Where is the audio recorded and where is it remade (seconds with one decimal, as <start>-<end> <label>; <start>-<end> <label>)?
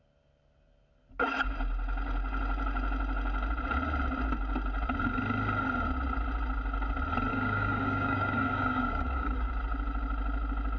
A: 0.0-7.3 recorded; 7.3-9.5 remade; 9.5-10.8 recorded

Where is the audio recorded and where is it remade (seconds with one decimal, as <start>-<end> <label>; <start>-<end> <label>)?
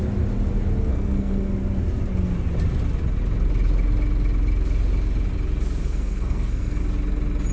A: 0.0-0.9 recorded; 0.9-1.5 remade; 1.5-5.8 recorded; 5.8-6.8 remade; 6.8-7.5 recorded